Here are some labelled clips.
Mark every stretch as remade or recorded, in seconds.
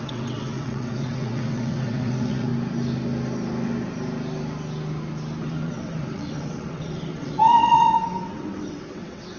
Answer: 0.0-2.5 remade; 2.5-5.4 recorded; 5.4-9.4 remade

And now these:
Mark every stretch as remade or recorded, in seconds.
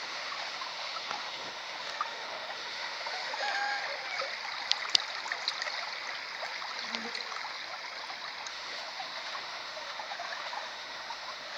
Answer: 0.0-3.8 remade; 3.8-8.5 recorded; 8.5-11.6 remade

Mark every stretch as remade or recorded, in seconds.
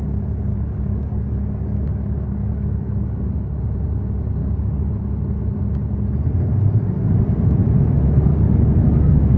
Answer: 0.0-0.5 recorded; 0.5-3.6 remade; 3.6-4.4 recorded; 4.4-4.9 remade; 4.9-8.3 recorded; 8.3-9.4 remade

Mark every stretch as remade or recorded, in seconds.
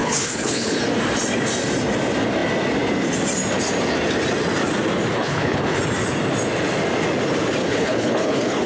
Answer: 0.0-0.8 remade; 0.8-5.1 recorded; 5.1-5.8 remade; 5.8-7.6 recorded; 7.6-8.7 remade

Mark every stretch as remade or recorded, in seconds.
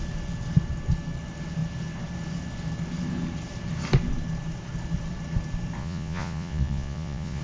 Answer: 0.0-5.8 recorded; 5.8-7.4 remade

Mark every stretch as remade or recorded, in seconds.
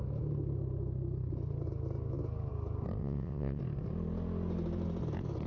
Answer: 0.0-3.0 recorded; 3.0-3.6 remade; 3.6-5.5 recorded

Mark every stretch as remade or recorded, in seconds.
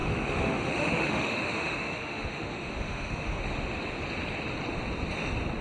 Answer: 0.0-3.4 remade; 3.4-5.6 recorded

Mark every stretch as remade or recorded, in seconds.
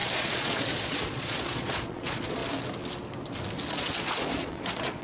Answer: 0.0-2.4 remade; 2.4-3.7 recorded; 3.7-5.0 remade